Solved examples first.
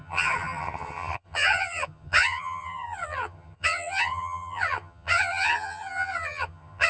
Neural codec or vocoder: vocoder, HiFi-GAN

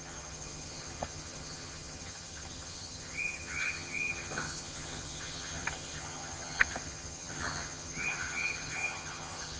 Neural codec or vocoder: vocoder, HiFi-GAN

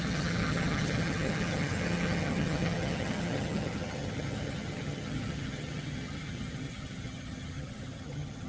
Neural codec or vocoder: vocoder, HiFi-GAN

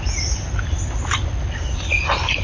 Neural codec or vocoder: none